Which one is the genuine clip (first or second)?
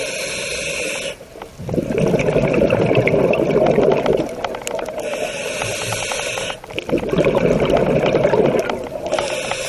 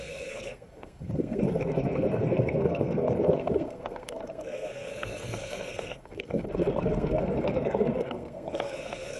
first